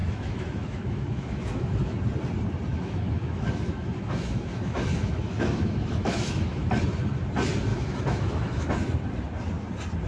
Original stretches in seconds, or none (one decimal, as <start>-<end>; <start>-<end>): 2.0-2.7; 6.8-7.7; 8.7-10.1